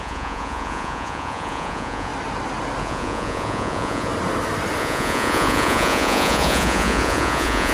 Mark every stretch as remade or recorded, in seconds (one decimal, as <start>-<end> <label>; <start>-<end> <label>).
0.0-2.1 remade; 2.1-2.8 recorded; 2.8-4.1 remade; 4.1-4.8 recorded; 4.8-7.7 remade